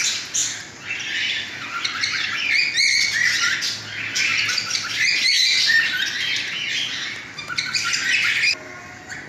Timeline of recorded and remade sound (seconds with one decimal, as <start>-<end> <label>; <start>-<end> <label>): 0.0-9.3 recorded

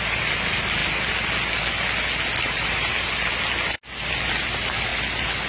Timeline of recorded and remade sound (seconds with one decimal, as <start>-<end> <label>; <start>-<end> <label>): 0.0-5.5 recorded